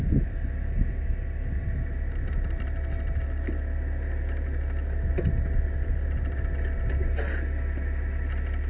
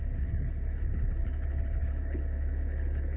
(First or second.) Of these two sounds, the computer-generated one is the second